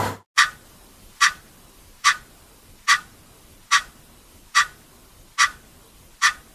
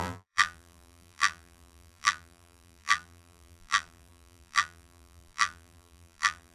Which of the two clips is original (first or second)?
first